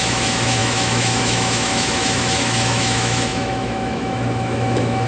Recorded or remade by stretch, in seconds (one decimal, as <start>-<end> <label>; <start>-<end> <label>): 0.0-5.1 remade